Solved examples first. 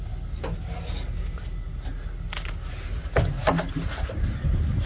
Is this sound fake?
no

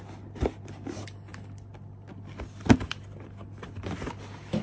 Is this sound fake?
no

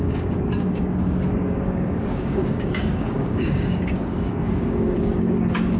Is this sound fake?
yes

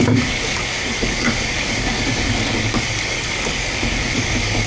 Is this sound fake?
yes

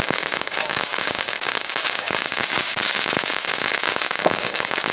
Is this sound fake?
yes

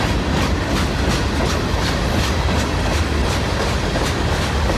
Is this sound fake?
no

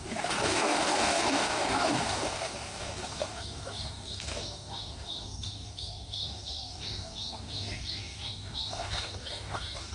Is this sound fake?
yes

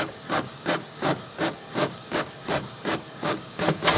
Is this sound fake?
yes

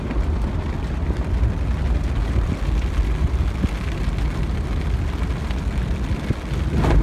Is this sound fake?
no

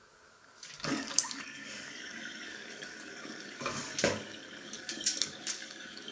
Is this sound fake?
yes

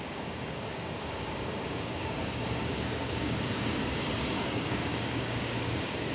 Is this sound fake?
yes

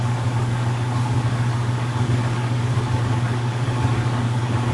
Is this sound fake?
yes